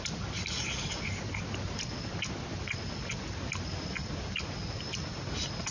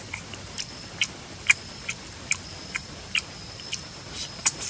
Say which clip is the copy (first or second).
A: second